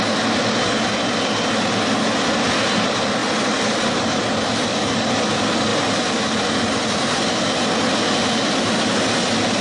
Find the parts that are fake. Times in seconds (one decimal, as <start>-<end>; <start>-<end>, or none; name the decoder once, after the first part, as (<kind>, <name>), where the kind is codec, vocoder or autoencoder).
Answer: 3.2-3.9 (vocoder, BigVGAN v2)